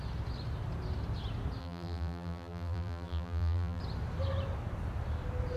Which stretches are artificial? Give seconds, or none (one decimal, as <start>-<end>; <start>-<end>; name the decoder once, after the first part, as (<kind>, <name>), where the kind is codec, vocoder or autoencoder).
1.6-3.8 (vocoder, BigVGAN v2)